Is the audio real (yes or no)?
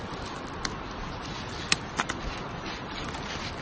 yes